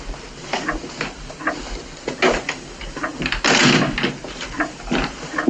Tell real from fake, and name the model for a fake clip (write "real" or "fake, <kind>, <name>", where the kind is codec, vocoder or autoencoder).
real